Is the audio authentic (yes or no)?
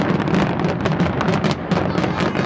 yes